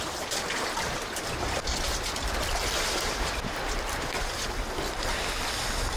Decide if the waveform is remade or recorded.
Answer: recorded